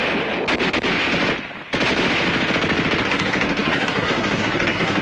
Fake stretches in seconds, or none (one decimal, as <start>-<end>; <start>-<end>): 3.0-5.0